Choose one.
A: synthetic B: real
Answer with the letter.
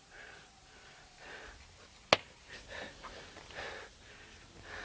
B